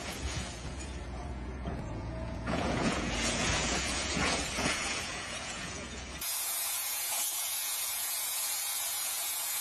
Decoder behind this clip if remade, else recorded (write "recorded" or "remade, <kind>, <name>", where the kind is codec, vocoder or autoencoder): remade, vocoder, Vocos